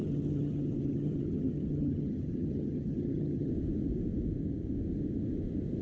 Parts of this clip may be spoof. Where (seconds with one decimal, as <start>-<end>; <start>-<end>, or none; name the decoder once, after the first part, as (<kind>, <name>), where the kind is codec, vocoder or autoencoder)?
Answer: 0.0-3.5 (vocoder, HiFi-GAN)